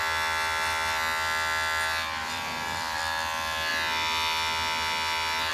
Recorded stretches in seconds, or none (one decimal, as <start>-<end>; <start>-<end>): 0.0-2.2; 3.0-5.5